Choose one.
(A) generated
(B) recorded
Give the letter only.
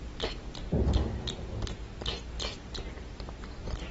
B